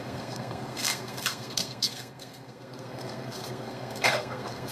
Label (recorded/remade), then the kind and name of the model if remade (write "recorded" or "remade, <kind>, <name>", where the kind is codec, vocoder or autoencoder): remade, codec, SNAC